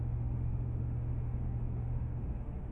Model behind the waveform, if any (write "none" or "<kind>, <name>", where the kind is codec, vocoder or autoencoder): autoencoder, DAC-VAE